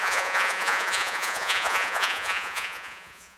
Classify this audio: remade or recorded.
remade